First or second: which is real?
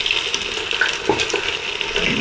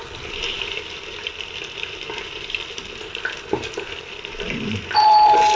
first